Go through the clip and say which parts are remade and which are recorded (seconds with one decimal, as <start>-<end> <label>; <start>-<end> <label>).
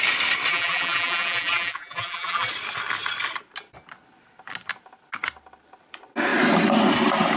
0.0-0.5 recorded; 0.5-2.5 remade; 2.5-7.4 recorded